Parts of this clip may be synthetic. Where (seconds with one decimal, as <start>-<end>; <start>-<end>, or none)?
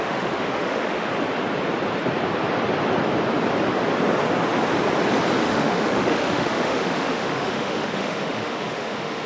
0.0-1.1; 5.4-9.3